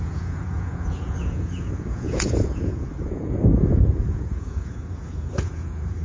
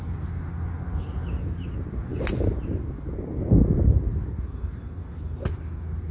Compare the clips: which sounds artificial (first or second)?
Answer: first